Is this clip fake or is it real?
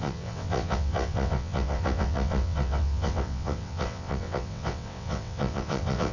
fake